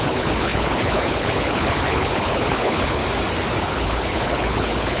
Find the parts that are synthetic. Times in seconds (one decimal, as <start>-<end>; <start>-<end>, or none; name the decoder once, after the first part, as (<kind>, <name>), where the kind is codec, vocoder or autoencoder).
0.0-3.0 (codec, HILCodec); 3.6-5.0

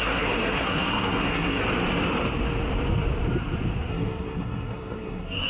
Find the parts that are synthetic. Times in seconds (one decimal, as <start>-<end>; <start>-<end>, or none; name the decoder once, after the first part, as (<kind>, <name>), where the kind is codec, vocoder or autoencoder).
0.0-1.6 (codec, SNAC); 3.9-5.5